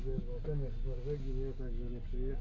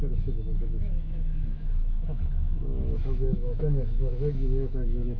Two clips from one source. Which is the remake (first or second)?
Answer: second